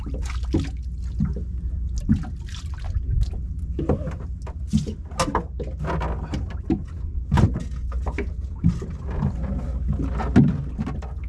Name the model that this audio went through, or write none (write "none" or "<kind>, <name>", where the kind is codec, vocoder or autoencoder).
none